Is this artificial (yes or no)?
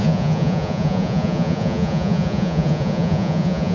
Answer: yes